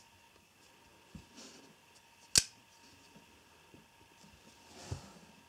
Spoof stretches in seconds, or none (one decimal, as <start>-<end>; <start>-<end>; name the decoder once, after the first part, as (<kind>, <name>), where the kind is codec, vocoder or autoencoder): none